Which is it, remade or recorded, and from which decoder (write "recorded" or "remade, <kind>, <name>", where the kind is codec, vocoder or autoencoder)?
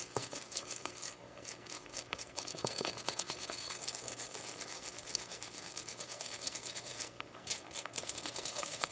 remade, codec, SNAC